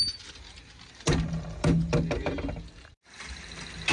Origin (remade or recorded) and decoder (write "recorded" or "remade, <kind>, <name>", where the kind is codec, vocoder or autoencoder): recorded